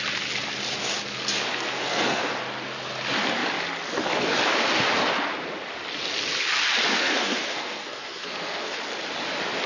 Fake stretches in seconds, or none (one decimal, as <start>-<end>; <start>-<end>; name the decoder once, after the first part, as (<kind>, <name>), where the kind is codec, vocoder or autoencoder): 1.5-2.3 (codec, SNAC); 6.9-8.8